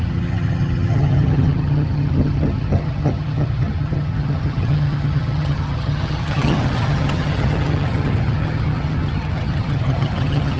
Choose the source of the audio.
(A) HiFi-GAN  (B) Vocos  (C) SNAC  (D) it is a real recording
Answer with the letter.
A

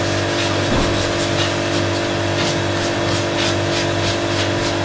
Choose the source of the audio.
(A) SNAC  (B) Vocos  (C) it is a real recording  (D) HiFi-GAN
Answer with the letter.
C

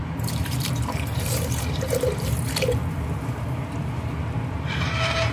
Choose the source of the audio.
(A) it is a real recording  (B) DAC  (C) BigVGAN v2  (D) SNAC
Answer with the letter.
C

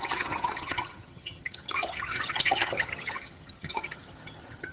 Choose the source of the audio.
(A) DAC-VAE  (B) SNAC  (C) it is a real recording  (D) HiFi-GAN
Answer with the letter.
D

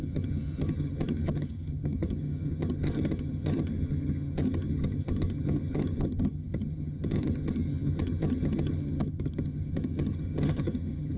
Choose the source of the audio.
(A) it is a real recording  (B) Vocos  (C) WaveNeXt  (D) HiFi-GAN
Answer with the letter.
D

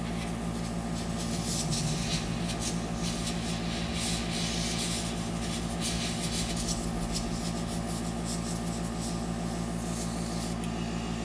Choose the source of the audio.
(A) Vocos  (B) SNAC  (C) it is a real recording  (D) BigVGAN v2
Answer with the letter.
C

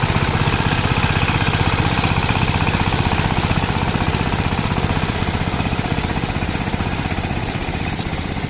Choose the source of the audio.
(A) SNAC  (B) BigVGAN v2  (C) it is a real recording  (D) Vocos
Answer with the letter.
B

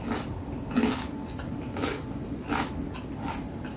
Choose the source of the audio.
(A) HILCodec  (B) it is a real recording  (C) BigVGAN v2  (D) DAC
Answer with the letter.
B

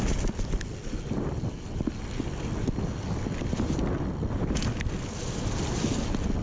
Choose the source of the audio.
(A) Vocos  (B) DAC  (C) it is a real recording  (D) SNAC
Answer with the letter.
C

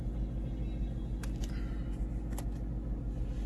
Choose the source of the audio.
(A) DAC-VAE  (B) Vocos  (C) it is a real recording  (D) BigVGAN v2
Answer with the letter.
C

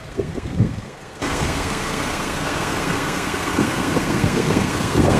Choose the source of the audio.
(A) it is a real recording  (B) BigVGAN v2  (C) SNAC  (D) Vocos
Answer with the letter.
C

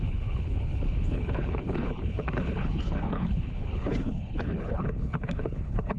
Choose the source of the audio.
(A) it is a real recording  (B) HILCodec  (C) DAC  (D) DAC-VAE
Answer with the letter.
B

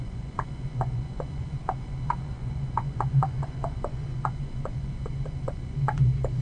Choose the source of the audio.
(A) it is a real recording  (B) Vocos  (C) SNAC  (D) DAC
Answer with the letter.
B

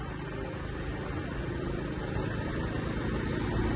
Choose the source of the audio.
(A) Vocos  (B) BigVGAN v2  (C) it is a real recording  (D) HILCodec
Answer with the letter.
C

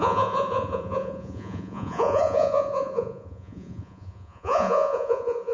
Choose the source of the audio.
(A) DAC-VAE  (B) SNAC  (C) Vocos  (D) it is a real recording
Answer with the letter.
C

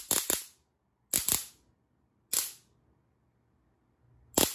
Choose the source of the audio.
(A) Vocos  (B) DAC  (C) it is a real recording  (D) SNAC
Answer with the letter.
C